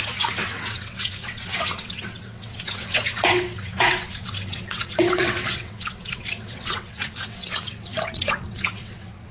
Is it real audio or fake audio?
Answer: fake